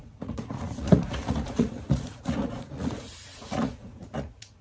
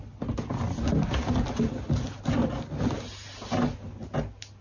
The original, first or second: second